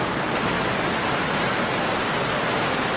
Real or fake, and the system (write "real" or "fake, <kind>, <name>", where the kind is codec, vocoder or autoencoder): real